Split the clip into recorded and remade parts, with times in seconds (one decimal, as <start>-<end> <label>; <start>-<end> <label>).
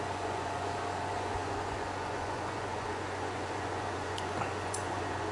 0.0-5.3 remade